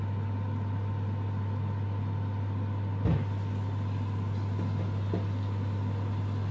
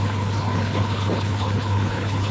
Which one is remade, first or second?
second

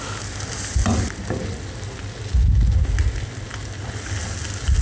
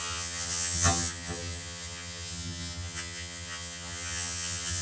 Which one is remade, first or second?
second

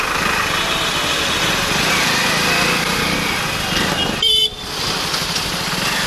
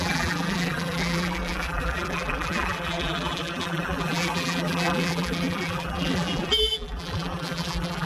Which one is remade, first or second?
second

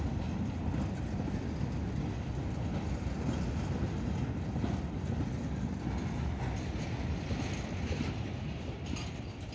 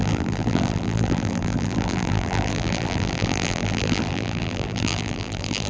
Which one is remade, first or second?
second